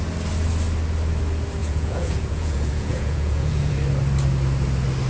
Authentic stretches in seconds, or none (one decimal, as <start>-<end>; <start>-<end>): 0.0-1.6; 3.7-5.1